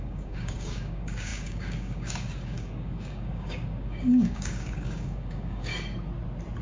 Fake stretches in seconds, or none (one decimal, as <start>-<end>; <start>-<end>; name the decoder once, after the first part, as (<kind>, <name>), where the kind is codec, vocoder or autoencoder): 0.0-5.7 (codec, DAC)